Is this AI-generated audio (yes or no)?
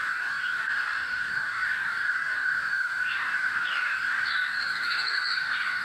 yes